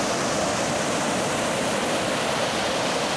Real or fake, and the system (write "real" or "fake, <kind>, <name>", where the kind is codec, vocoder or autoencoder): fake, vocoder, BigVGAN v2